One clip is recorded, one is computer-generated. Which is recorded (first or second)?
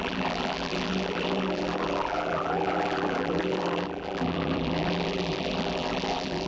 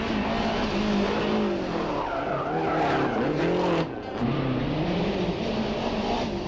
second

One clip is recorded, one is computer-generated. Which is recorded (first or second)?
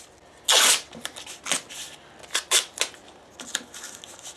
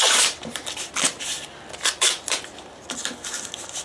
first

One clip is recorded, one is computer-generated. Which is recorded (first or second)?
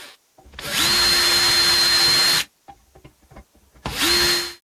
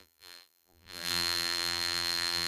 first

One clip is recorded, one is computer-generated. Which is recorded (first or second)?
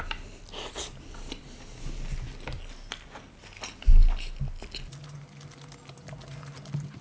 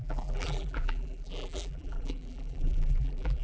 first